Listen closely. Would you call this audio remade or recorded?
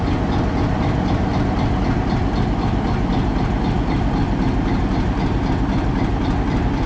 recorded